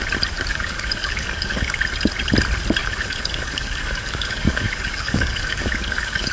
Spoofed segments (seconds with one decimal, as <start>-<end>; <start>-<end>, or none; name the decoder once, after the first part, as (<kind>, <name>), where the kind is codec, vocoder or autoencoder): 0.5-1.8 (codec, DAC); 2.8-6.3

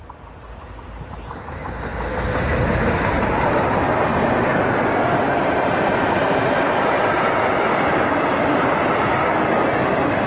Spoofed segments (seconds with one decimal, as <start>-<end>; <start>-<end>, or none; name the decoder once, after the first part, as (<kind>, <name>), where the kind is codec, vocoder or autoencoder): none